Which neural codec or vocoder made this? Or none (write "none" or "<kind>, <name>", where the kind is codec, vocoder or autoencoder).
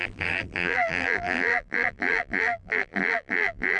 vocoder, BigVGAN v2